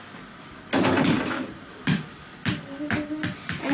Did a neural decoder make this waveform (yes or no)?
no